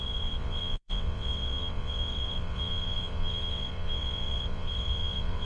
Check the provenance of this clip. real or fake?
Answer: fake